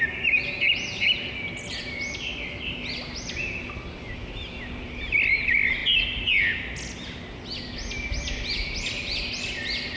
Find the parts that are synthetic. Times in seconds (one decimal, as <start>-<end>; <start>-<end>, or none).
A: none